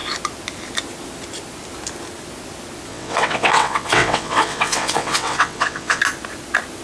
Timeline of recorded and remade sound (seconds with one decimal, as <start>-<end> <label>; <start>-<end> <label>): 0.0-2.9 recorded; 2.9-6.0 remade; 6.0-6.8 recorded